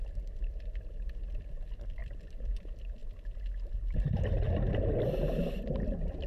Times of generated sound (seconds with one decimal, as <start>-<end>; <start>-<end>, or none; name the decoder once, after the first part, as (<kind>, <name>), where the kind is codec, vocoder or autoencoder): 2.0-2.5 (vocoder, BigVGAN v2)